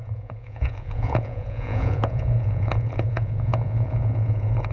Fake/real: fake